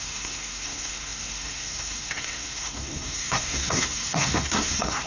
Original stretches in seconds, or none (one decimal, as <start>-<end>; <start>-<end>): none